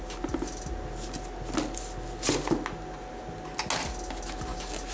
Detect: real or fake real